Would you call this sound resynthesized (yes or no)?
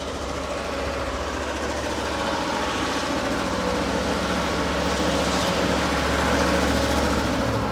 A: no